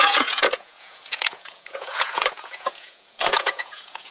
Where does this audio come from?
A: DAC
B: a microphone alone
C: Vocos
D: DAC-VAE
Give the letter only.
C